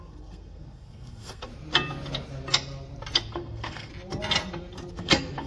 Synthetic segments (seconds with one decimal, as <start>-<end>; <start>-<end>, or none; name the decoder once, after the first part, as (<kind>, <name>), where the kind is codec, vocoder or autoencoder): 0.0-1.5 (codec, SNAC); 3.3-3.9; 4.9-5.5